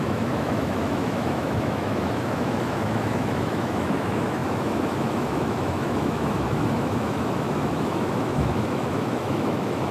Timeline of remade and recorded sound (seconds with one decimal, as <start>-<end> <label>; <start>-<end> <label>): 0.0-9.9 remade